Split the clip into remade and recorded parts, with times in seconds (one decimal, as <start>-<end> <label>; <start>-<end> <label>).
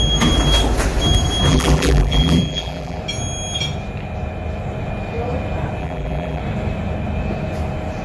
0.0-1.5 recorded; 1.5-3.0 remade; 3.0-5.8 recorded; 5.8-6.4 remade; 6.4-8.0 recorded